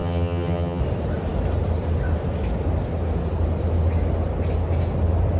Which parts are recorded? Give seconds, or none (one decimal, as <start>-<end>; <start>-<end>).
0.8-5.4